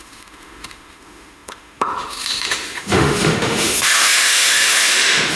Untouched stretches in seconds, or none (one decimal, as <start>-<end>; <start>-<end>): none